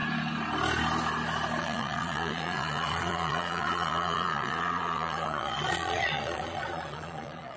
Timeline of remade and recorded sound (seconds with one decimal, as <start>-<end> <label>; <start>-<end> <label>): 0.0-1.6 recorded; 1.6-7.6 remade